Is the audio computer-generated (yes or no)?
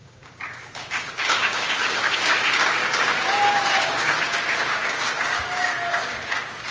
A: yes